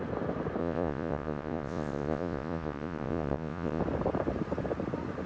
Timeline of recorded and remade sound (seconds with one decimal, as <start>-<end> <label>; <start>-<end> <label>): 0.0-0.6 recorded; 0.6-3.8 remade; 3.8-5.3 recorded